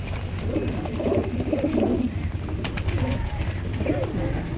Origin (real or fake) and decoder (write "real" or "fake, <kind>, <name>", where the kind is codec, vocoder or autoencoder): real